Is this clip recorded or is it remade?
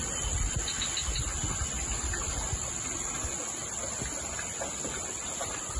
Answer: recorded